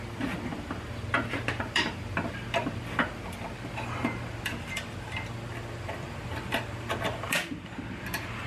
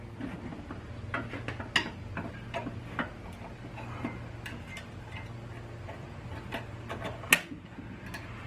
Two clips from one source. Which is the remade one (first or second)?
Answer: first